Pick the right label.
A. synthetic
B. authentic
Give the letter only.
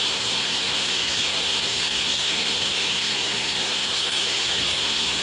A